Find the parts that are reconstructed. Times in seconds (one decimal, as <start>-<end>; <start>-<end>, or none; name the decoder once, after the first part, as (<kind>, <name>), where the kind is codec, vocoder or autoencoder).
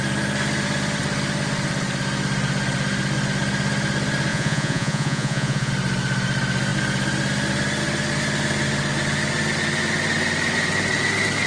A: 4.3-5.7 (vocoder, Vocos)